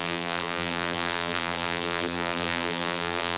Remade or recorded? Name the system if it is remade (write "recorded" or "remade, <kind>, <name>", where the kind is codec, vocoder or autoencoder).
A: remade, vocoder, BigVGAN v2